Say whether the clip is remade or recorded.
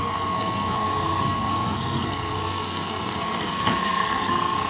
remade